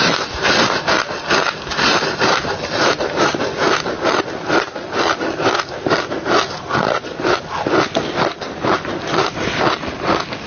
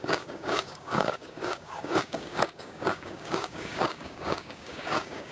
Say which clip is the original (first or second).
first